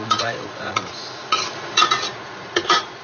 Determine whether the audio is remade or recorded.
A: remade